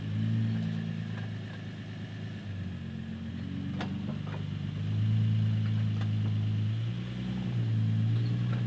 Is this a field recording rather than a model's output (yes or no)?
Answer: yes